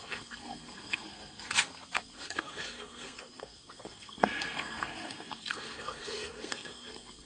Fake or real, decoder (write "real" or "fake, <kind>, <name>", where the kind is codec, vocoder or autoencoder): fake, codec, SNAC